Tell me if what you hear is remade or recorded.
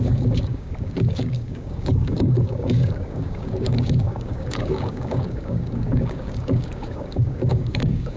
remade